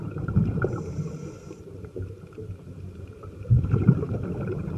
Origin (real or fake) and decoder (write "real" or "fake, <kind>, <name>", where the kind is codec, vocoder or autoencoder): fake, vocoder, BigVGAN v2